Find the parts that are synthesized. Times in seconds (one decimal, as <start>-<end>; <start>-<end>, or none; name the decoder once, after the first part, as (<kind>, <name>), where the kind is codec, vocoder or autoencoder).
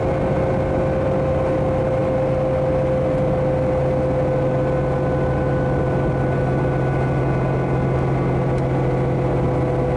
none